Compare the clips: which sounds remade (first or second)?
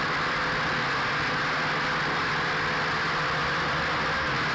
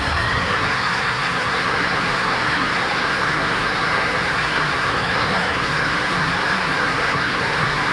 second